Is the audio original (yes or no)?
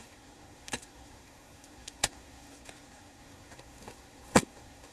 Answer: no